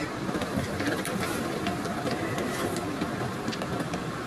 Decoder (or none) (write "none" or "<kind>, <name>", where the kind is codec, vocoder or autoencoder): none